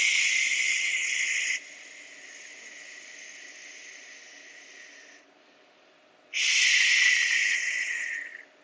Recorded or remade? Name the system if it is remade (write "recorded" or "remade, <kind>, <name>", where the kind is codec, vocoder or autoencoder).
recorded